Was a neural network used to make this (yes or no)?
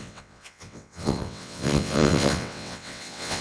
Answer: yes